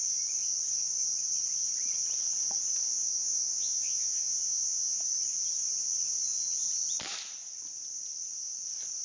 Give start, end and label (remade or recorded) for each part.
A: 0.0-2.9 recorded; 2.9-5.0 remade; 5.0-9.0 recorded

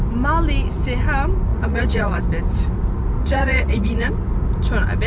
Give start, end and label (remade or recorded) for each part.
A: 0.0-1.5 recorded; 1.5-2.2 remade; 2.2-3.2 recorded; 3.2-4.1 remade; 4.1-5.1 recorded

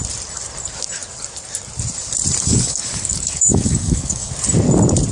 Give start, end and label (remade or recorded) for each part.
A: 0.0-2.5 recorded; 2.5-4.3 remade; 4.3-5.1 recorded

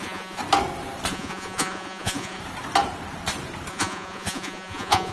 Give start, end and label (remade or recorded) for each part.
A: 0.0-0.4 remade; 0.4-1.1 recorded; 1.1-2.4 remade; 2.4-3.7 recorded; 3.7-5.1 remade

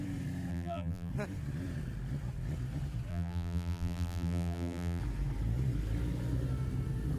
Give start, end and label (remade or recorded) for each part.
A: 0.0-0.5 recorded; 0.5-1.1 remade; 1.1-3.1 recorded; 3.1-5.0 remade; 5.0-7.2 recorded